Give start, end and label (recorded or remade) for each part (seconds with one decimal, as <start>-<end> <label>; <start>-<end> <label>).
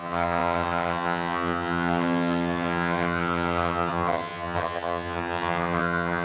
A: 0.0-6.2 remade